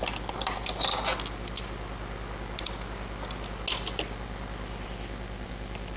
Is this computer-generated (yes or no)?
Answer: no